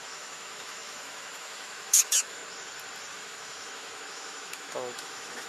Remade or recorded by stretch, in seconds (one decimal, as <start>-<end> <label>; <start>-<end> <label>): 0.0-2.4 remade; 2.4-3.1 recorded; 3.1-5.5 remade